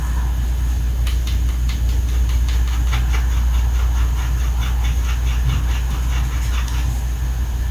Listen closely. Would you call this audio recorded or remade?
recorded